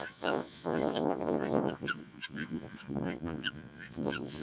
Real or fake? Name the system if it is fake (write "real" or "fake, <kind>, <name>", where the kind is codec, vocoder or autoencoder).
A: fake, vocoder, Vocos